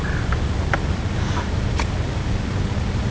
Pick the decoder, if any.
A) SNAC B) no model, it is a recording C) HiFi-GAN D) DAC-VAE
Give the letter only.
B